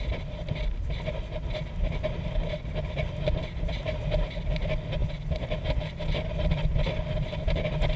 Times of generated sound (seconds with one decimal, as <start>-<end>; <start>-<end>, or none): none